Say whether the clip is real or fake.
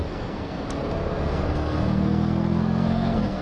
fake